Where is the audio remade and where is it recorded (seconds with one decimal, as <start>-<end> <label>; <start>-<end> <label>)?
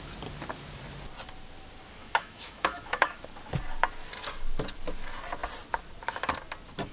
0.0-2.0 recorded; 2.0-3.2 remade; 3.2-6.9 recorded